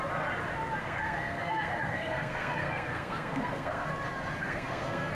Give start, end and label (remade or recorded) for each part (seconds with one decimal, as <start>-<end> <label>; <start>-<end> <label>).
0.0-0.8 recorded; 0.8-3.9 remade; 3.9-4.4 recorded; 4.4-5.1 remade